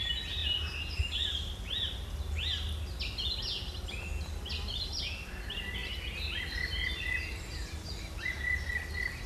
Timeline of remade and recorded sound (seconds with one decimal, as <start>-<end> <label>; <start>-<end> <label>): 0.0-9.3 recorded

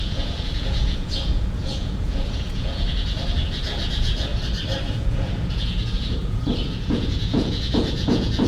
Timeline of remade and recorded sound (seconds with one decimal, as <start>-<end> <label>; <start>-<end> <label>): 0.0-4.3 remade; 4.3-4.9 recorded; 4.9-8.5 remade

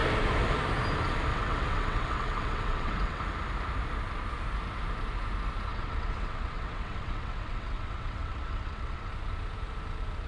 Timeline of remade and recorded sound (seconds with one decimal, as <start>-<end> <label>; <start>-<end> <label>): 0.0-1.3 recorded; 1.3-3.2 remade; 3.2-5.7 recorded; 5.7-9.1 remade; 9.1-10.3 recorded

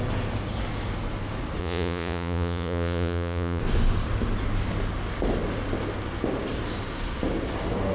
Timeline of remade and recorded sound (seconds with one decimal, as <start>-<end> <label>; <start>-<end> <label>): 0.0-1.6 recorded; 1.6-3.6 remade; 3.6-7.9 recorded

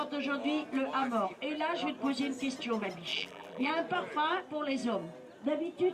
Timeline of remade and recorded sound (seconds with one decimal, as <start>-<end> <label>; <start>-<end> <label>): 0.0-3.1 recorded; 3.1-3.7 remade; 3.7-5.9 recorded